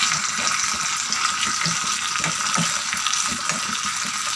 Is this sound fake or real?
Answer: real